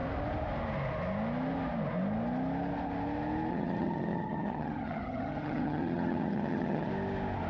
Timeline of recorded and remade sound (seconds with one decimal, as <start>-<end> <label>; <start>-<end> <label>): 0.0-3.5 recorded; 3.5-6.9 remade; 6.9-7.5 recorded